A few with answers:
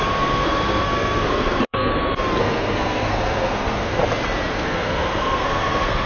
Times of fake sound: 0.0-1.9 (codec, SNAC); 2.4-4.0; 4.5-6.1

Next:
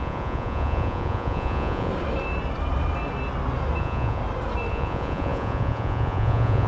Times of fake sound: 0.0-1.9 (vocoder, Vocos); 3.8-4.2; 4.7-6.7

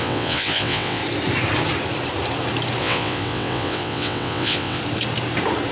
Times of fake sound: 0.0-1.0 (vocoder, WaveNeXt); 2.8-4.8

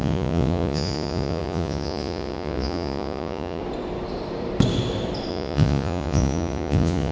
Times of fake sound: 0.0-3.6 (vocoder, Vocos); 5.3-7.1

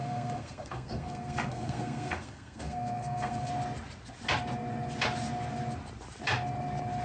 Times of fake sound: 0.0-3.5 (codec, SNAC)

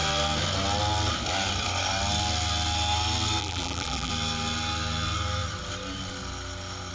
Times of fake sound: 3.4-4.1 (vocoder, BigVGAN v2)

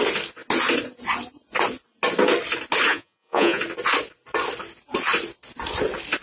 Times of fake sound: 2.9-3.6 (vocoder, Vocos)